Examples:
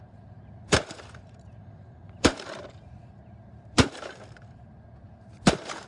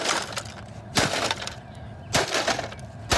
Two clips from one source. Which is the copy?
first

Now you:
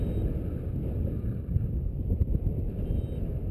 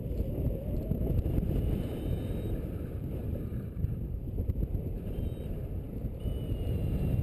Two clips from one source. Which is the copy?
second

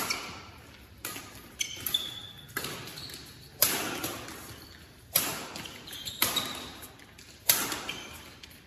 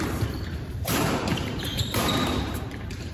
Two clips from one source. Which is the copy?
second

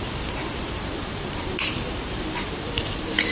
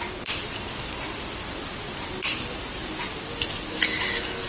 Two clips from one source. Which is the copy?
first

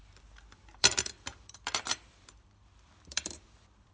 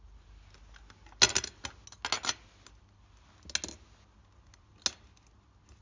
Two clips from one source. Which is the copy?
first